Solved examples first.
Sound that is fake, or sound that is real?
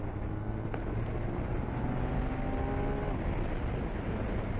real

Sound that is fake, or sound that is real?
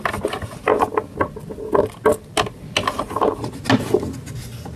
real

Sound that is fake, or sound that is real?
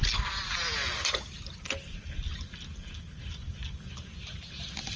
real